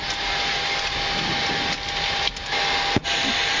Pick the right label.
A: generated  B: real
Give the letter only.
B